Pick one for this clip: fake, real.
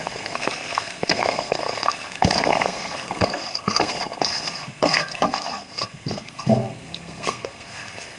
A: fake